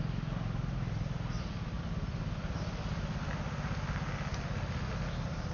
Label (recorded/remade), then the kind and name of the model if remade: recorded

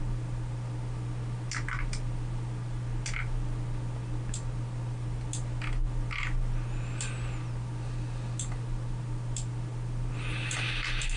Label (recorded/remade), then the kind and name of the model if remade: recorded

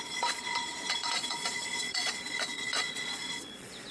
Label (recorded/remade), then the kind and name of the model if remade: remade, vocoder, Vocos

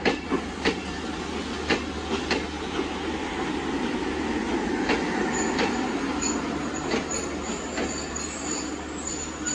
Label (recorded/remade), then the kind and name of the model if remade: recorded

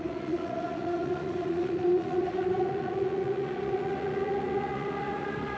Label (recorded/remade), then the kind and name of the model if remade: remade, vocoder, Vocos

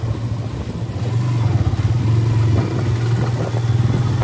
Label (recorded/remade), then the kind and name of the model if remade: recorded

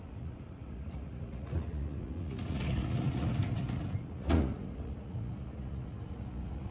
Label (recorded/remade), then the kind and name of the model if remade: remade, vocoder, Vocos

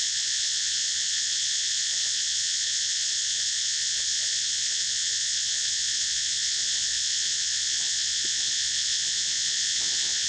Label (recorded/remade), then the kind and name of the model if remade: remade, vocoder, Vocos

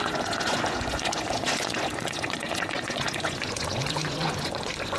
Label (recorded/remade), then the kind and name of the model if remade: remade, vocoder, Vocos